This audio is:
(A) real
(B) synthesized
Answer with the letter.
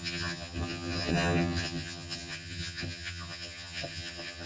B